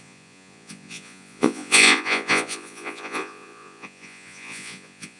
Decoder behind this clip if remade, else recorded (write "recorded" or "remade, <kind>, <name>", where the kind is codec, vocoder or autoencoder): remade, vocoder, Vocos